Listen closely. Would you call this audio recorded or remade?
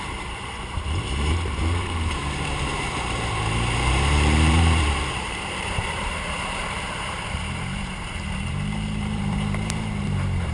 remade